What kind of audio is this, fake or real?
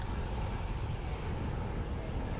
real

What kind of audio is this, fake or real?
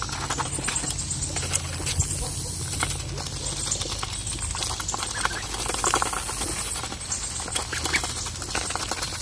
real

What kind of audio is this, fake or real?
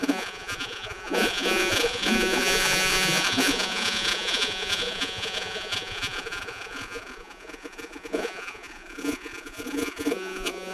fake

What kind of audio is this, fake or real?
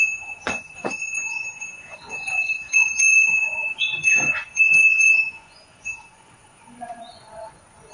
fake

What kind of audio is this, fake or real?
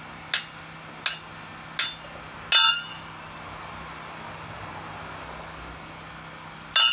real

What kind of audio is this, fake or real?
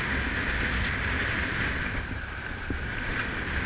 real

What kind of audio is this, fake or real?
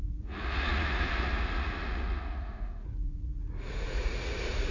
fake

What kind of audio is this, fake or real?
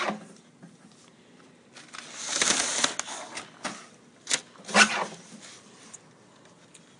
real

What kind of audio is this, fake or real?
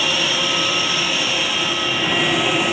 real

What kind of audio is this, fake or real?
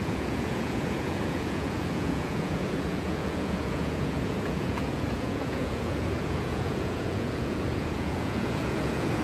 fake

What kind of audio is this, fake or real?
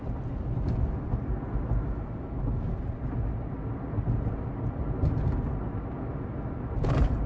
real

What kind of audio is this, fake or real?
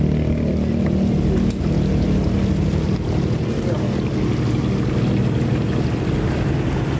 real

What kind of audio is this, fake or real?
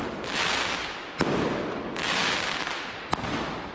real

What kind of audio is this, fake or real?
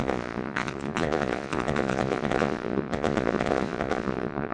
fake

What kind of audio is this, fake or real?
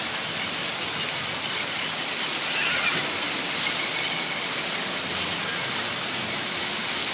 real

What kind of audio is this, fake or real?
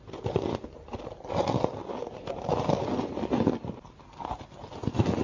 real